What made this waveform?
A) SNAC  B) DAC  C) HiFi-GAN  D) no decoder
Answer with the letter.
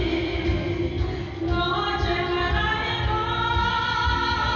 D